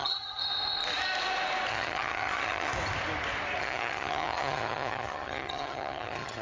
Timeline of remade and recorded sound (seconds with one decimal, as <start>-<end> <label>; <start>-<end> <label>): 0.0-0.4 remade; 0.4-1.7 recorded; 1.7-2.7 remade; 2.7-3.6 recorded; 3.6-6.4 remade